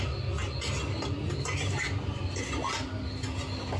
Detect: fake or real real